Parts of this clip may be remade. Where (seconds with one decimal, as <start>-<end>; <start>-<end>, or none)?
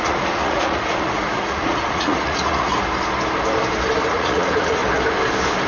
0.0-2.7; 4.1-4.8